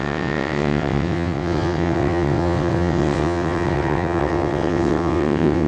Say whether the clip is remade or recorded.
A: remade